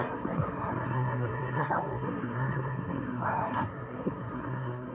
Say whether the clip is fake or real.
fake